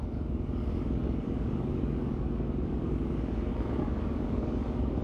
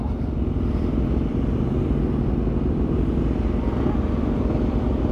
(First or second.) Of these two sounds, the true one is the second